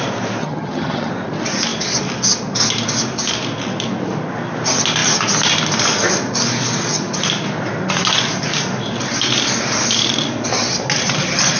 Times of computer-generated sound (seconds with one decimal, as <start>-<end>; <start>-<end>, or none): 0.4-1.1